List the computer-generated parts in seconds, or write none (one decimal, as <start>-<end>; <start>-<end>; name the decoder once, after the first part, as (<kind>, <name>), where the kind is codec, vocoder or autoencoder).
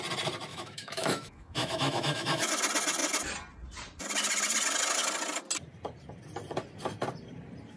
0.5-2.5 (autoencoder, DAC-VAE)